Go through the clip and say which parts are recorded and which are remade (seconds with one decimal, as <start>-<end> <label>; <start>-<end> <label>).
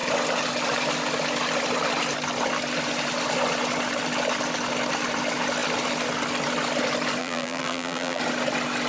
0.0-7.2 recorded; 7.2-8.2 remade; 8.2-8.9 recorded